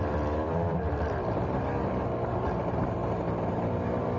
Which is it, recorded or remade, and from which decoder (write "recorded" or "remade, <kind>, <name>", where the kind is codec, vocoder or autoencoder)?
remade, vocoder, BigVGAN v2